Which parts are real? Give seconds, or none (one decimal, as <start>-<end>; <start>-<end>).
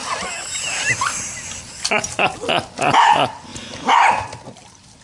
0.0-3.0; 3.5-4.5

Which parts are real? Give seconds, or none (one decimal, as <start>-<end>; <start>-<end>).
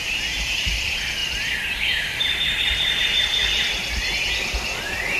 3.4-4.8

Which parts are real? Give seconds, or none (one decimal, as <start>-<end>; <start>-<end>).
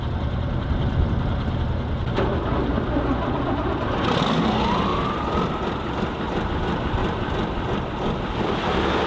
0.0-2.5; 4.1-7.0; 7.9-9.1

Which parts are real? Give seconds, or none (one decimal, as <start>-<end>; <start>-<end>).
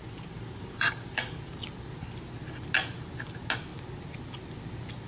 1.6-5.1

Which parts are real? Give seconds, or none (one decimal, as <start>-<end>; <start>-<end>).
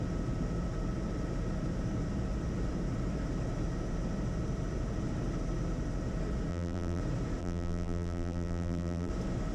0.0-6.5; 7.0-7.4; 9.1-9.5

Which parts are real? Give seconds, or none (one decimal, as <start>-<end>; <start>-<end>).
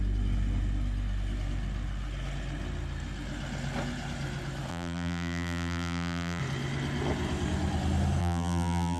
0.0-4.7; 6.4-8.2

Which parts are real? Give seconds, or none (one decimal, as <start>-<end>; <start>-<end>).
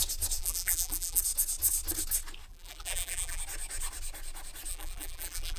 0.0-0.4; 1.2-2.5; 3.4-4.7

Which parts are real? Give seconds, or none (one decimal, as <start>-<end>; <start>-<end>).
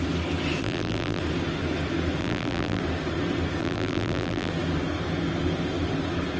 0.0-0.6; 1.2-2.2; 2.8-3.6; 4.5-6.4